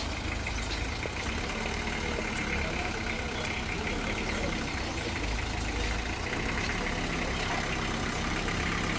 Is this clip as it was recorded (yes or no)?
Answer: yes